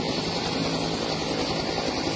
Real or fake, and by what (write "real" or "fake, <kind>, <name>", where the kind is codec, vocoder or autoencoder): real